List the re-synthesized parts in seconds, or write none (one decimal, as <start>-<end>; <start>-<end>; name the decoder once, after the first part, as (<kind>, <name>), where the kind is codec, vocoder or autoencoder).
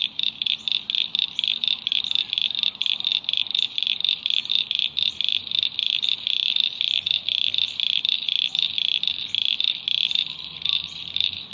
0.0-11.5 (vocoder, BigVGAN v2)